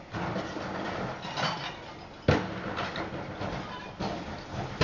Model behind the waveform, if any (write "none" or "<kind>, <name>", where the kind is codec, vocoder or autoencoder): none